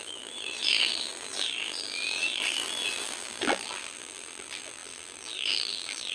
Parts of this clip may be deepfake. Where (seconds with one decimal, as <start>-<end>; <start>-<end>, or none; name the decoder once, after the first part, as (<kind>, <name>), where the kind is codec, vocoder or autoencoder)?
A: 0.0-6.1 (vocoder, BigVGAN v2)